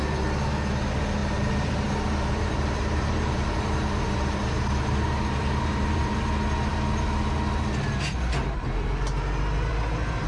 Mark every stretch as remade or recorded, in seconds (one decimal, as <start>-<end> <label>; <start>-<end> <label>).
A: 0.0-1.2 recorded; 1.2-6.2 remade; 6.2-10.3 recorded